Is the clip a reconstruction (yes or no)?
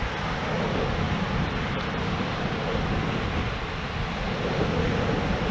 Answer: no